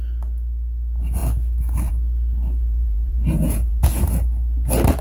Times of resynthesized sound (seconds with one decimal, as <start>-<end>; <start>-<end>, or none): 2.6-4.0